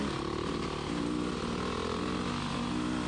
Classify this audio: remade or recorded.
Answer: recorded